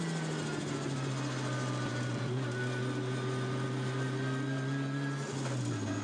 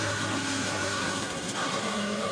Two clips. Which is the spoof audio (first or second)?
second